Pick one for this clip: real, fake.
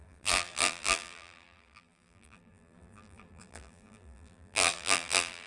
fake